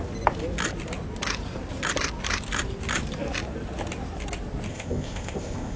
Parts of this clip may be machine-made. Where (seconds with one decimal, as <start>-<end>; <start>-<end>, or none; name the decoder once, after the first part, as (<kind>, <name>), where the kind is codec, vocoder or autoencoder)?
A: 4.7-5.8 (codec, ZipCodec)